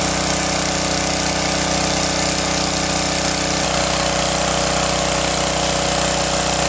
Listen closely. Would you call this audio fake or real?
real